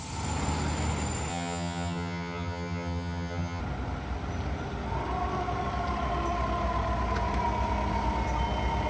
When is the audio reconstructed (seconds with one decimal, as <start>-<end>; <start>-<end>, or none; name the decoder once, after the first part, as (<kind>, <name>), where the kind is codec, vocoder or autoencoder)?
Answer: 1.3-3.6 (vocoder, HiFi-GAN)